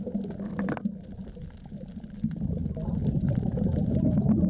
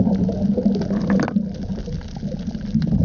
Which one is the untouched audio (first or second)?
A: second